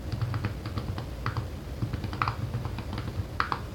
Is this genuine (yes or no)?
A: yes